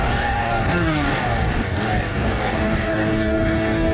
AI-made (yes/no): yes